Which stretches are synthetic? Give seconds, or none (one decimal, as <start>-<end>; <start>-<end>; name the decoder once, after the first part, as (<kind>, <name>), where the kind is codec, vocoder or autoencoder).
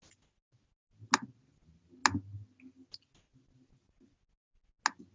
none